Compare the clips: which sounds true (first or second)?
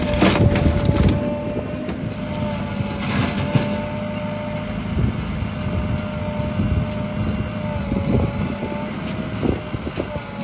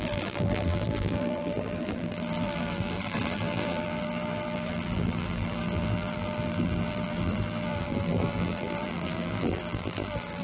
first